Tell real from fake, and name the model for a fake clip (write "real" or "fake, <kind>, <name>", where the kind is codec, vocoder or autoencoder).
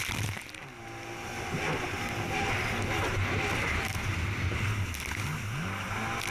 real